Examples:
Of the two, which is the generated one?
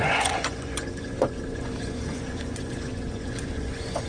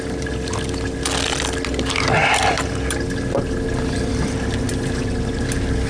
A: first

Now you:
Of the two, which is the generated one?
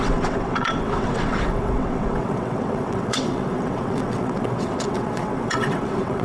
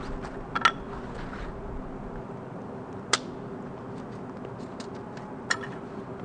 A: first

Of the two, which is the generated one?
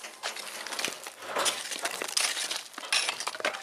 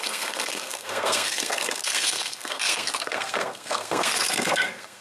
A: second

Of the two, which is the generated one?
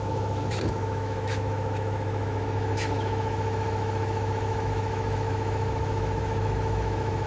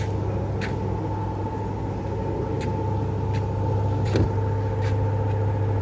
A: first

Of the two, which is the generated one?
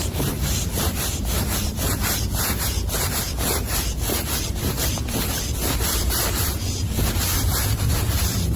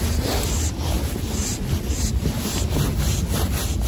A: first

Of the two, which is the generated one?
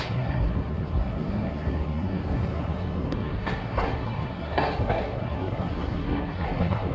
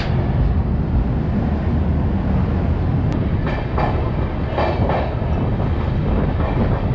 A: first